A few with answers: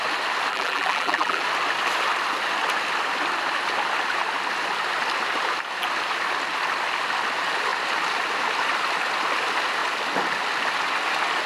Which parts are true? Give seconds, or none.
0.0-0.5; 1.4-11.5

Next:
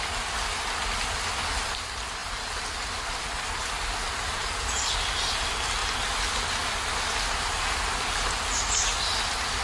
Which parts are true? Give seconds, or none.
0.0-9.6